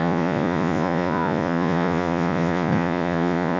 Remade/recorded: remade